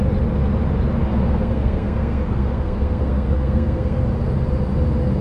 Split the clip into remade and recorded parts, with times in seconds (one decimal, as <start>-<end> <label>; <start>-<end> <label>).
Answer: 0.0-1.1 recorded; 1.1-4.0 remade; 4.0-5.2 recorded